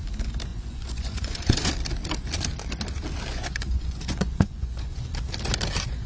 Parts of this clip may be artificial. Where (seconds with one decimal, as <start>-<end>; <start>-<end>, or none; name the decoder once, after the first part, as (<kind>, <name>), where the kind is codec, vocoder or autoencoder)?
0.5-1.7 (vocoder, Vocos); 3.3-5.0